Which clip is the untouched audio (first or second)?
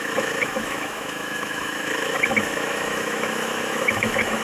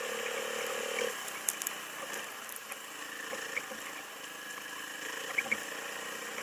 second